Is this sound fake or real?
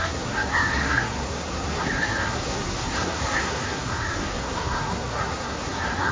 fake